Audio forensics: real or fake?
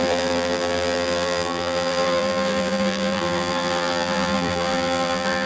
fake